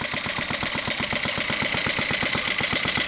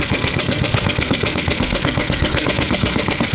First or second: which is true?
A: first